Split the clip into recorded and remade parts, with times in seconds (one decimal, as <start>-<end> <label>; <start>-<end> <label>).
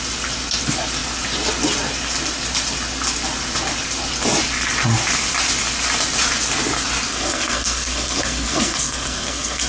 0.0-7.1 recorded; 7.1-9.7 remade